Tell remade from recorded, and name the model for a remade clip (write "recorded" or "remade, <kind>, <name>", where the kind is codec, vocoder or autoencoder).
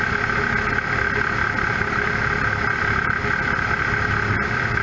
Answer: recorded